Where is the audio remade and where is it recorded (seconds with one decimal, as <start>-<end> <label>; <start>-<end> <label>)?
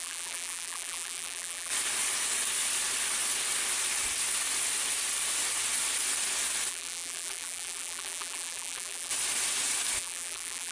0.0-1.7 remade; 1.7-6.7 recorded; 6.7-9.1 remade; 9.1-10.0 recorded; 10.0-10.7 remade